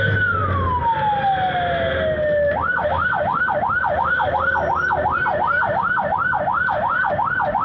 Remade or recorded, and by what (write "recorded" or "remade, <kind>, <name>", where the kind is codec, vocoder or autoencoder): recorded